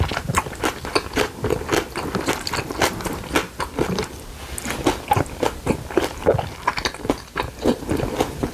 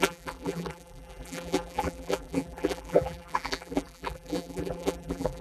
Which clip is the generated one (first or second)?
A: second